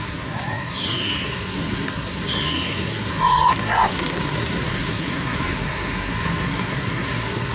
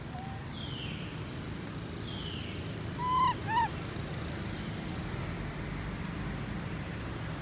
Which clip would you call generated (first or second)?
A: first